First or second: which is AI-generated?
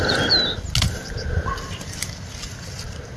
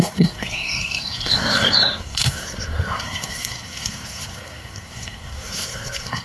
second